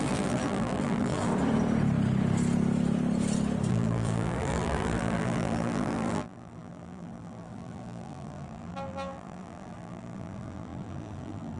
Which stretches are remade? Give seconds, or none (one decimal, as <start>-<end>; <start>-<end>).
0.0-1.3; 3.7-11.6